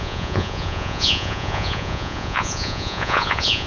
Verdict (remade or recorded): remade